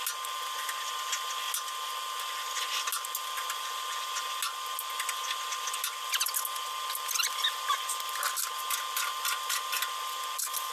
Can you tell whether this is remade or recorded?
recorded